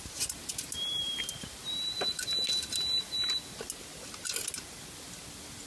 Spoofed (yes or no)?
no